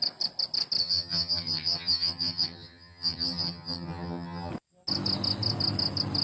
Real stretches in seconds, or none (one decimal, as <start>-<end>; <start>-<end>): 0.0-0.8; 4.5-6.2